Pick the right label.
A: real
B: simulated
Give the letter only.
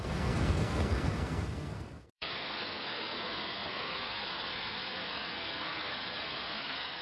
B